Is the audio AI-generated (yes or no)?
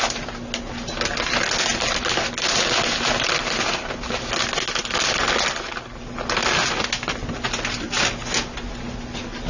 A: no